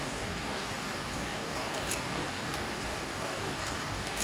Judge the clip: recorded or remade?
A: remade